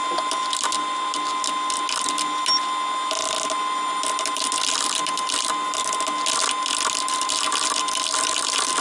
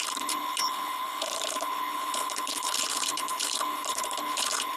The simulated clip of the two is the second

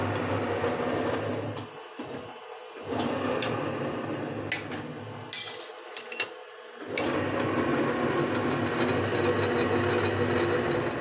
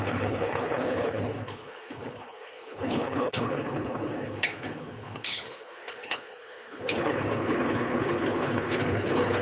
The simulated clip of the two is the second